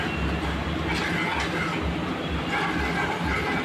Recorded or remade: recorded